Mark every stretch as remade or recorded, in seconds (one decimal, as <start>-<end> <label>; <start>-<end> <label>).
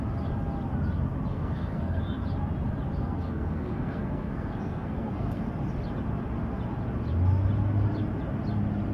0.0-1.3 recorded; 1.3-2.0 remade; 2.0-3.0 recorded; 3.0-5.5 remade; 5.5-8.9 recorded